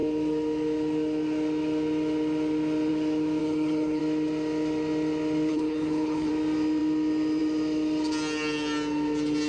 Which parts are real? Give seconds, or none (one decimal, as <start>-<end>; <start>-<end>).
0.0-3.4; 4.0-5.5; 6.3-9.5